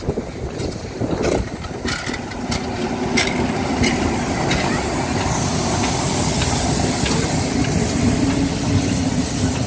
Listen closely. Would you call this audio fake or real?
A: real